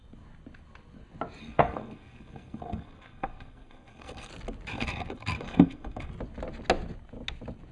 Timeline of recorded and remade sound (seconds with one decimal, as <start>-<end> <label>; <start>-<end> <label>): 0.0-1.4 recorded; 1.4-4.3 remade; 4.3-4.7 recorded; 4.7-6.1 remade; 6.1-7.7 recorded